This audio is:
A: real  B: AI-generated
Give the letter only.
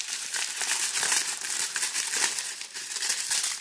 B